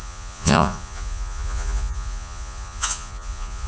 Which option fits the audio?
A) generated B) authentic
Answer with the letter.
A